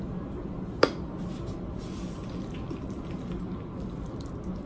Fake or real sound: real